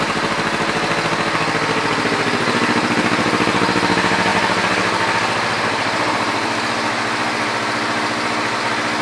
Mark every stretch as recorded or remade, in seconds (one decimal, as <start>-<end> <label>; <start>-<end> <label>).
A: 0.0-9.0 recorded